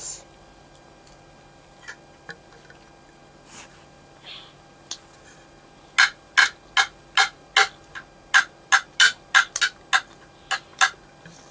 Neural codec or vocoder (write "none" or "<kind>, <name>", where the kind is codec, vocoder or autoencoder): none